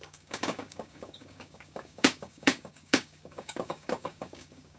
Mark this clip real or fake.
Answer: fake